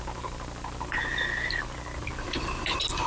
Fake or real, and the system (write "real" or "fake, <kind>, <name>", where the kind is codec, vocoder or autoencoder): real